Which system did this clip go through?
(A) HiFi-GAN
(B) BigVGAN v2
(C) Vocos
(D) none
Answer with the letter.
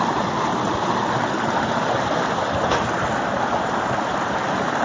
D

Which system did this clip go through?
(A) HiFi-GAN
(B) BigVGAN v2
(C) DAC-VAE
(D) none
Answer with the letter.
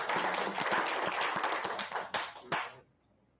D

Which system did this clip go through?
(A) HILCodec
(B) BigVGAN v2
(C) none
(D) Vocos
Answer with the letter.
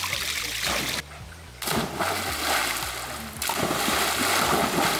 C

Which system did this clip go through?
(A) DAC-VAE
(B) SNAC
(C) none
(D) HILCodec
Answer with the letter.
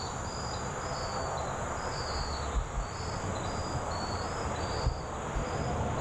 C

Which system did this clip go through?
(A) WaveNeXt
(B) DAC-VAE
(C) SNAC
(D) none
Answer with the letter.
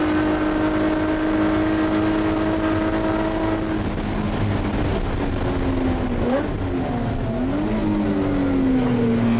D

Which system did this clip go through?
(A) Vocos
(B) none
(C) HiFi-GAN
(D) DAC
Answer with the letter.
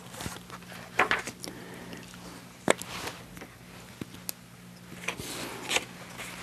B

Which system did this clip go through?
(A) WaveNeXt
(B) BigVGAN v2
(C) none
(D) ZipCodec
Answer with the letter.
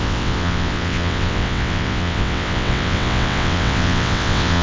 A